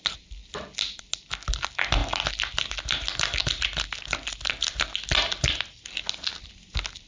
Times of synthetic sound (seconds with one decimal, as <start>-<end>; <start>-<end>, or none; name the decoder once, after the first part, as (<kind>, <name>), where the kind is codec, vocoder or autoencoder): none